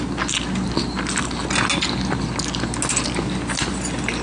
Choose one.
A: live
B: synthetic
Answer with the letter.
A